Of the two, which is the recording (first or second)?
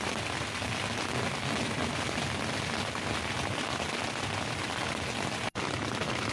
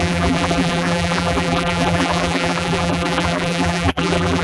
first